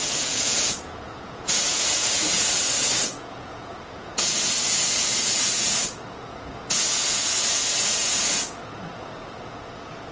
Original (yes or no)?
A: no